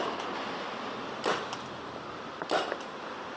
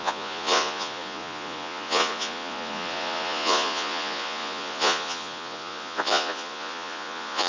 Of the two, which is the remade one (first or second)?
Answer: second